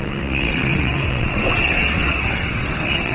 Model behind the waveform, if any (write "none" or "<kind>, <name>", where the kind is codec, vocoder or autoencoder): vocoder, WaveNeXt